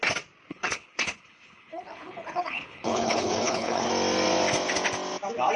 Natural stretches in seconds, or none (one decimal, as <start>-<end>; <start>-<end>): 0.0-0.5; 3.9-5.6